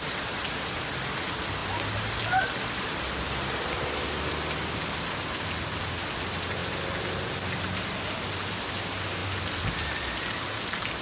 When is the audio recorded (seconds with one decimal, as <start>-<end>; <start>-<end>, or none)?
0.0-11.0

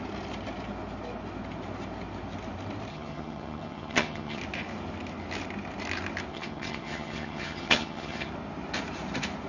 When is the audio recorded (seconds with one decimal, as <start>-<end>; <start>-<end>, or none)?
0.0-2.9; 4.4-6.3; 8.3-9.5